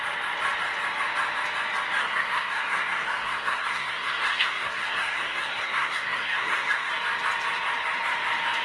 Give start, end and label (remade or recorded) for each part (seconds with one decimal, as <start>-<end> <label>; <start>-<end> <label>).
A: 0.0-2.0 recorded; 2.0-6.9 remade; 6.9-8.6 recorded